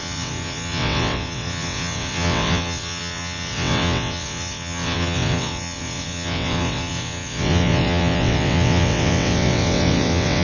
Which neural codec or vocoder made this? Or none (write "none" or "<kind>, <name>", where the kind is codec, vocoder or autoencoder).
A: vocoder, WaveNeXt